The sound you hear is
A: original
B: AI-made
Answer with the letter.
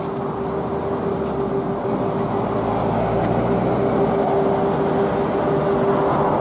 A